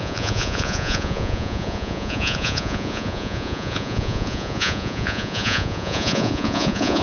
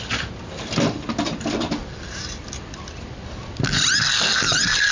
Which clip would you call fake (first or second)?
first